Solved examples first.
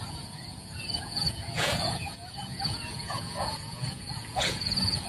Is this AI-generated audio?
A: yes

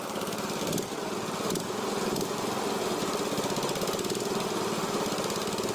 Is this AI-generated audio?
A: no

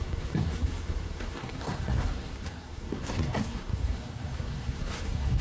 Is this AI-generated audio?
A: yes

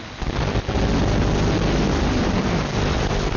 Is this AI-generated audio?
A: no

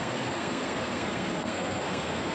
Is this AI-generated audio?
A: yes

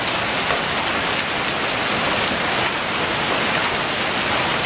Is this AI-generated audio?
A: no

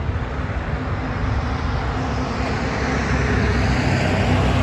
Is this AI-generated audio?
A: no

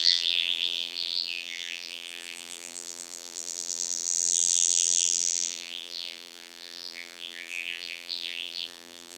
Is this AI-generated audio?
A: yes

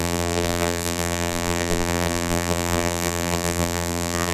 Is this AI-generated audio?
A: yes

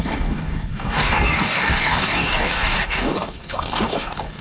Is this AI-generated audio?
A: yes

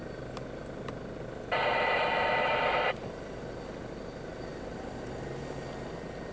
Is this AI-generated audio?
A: no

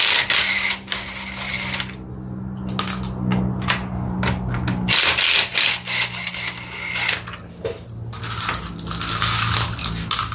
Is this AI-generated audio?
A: no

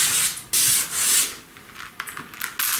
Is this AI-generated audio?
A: no